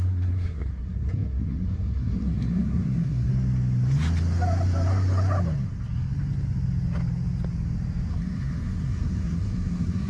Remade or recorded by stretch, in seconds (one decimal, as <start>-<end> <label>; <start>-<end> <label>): 0.0-3.3 remade; 3.3-8.1 recorded; 8.1-10.1 remade